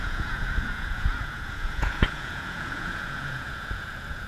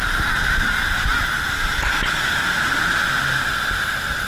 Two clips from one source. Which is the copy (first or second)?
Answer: first